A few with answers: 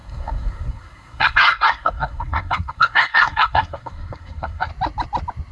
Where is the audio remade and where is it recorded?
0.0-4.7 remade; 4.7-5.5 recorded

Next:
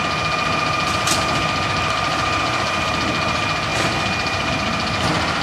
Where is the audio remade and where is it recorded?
0.0-2.1 recorded; 2.1-2.9 remade; 2.9-3.7 recorded; 3.7-4.5 remade; 4.5-5.4 recorded